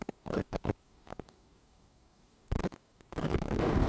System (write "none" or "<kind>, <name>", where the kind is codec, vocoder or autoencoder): codec, DAC